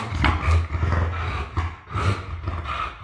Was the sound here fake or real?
real